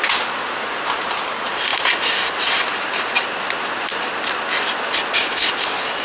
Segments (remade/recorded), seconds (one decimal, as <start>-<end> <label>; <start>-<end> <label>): 0.0-6.0 recorded